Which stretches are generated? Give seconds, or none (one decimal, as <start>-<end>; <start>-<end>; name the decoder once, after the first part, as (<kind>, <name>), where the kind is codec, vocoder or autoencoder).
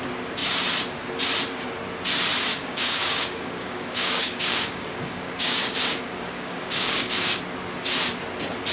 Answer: 2.5-7.4 (codec, DAC)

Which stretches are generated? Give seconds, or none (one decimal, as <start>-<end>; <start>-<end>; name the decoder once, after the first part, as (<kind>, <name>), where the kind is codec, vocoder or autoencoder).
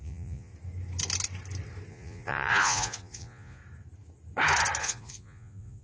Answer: 0.0-0.5 (vocoder, Vocos); 1.9-3.6; 4.8-5.8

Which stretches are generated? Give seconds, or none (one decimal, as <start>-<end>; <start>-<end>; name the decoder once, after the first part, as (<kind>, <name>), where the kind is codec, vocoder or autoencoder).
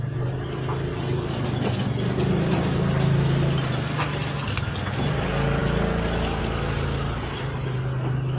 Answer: none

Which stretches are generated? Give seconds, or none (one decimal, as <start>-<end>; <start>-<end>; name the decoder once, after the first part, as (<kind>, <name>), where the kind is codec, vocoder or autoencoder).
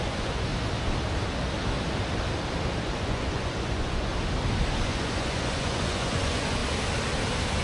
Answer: 0.0-0.5 (vocoder, Vocos); 2.8-4.1; 4.8-6.6